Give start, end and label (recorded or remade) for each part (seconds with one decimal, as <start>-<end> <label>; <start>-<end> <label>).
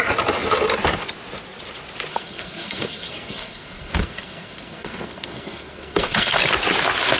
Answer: 0.0-2.1 recorded; 2.1-6.4 remade; 6.4-7.2 recorded